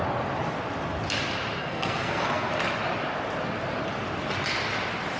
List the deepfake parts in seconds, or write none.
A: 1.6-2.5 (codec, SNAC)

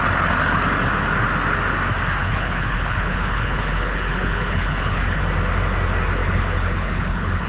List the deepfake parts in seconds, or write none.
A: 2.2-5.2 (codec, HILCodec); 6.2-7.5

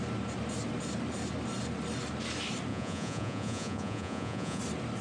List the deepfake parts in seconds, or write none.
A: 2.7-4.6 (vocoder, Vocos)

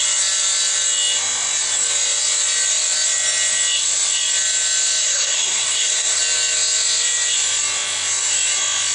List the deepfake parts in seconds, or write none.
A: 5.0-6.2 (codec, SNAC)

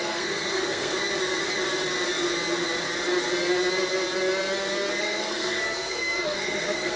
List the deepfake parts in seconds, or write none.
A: 0.0-0.9 (codec, SNAC); 5.0-7.0

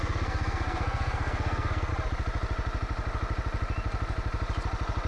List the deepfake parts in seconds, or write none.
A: 0.0-1.9 (codec, SNAC)

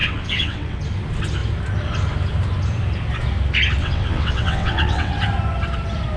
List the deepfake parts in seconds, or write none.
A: 0.0-0.8 (vocoder, WaveNeXt); 3.8-5.1

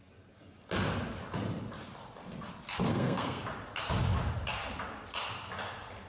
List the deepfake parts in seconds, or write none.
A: 2.9-3.4 (codec, SNAC)